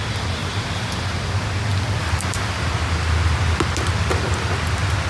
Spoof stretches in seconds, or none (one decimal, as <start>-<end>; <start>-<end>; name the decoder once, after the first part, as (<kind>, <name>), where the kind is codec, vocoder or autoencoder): 0.4-1.2 (vocoder, BigVGAN v2); 1.7-2.7